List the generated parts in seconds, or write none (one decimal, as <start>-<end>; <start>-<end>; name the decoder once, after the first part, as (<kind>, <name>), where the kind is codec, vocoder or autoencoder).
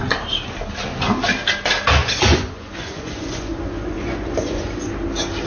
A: 2.0-4.9 (vocoder, Vocos)